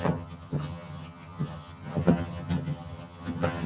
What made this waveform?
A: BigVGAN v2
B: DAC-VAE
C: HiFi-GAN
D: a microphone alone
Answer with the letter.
C